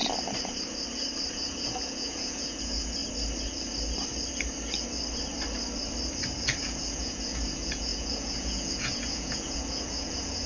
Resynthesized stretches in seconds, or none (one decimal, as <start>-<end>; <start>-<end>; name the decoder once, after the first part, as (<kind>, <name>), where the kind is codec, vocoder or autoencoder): 1.3-3.0 (vocoder, Vocos); 6.6-10.5